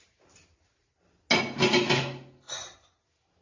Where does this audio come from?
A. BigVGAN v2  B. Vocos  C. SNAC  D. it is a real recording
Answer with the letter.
D